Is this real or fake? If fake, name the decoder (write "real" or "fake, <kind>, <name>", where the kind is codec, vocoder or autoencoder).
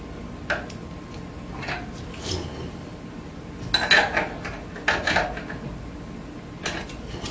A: real